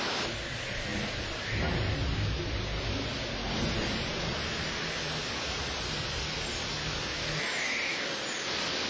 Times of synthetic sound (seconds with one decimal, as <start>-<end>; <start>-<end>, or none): none